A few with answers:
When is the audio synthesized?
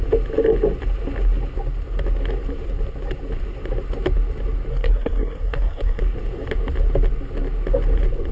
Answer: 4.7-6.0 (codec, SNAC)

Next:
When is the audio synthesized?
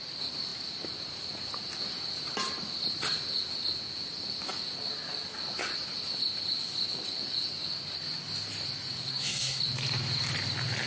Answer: 9.1-9.6 (codec, SNAC)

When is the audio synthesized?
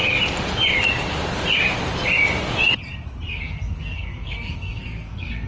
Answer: 3.3-5.5 (codec, SNAC)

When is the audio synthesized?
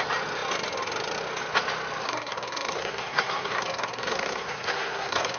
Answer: 2.0-5.4 (codec, SNAC)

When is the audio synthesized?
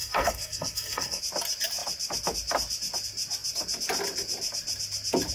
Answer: 0.0-1.2 (codec, SNAC)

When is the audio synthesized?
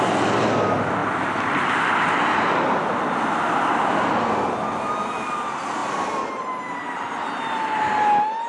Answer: none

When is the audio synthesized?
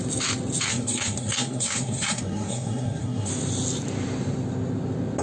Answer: 0.7-3.3 (codec, SNAC)